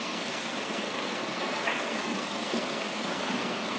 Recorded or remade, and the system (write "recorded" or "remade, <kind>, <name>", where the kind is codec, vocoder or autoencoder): remade, codec, SNAC